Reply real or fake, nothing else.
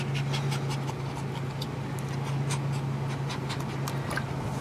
real